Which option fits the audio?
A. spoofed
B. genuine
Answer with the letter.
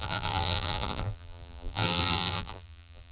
A